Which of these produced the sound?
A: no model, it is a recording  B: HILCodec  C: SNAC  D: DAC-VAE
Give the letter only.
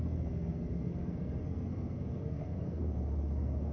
C